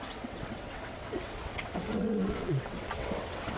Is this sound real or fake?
fake